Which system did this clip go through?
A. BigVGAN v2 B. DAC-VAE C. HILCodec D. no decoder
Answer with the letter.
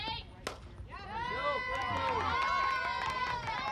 D